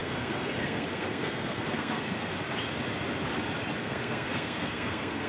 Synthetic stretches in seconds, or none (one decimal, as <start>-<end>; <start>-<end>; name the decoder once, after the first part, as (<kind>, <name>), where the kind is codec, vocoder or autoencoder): 0.0-2.3 (codec, SNAC); 3.8-5.3